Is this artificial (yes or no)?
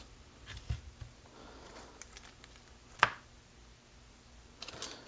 no